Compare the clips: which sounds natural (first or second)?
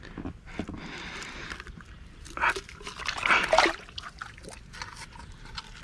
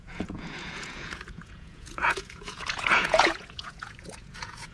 first